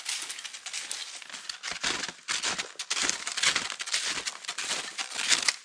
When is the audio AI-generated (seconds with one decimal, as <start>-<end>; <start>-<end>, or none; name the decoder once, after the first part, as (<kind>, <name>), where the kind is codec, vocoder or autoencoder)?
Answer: none